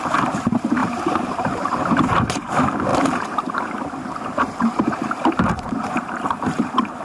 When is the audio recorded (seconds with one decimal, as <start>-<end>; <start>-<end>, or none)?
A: none